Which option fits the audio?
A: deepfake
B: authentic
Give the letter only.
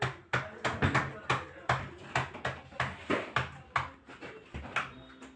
B